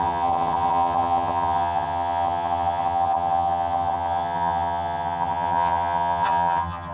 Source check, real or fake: fake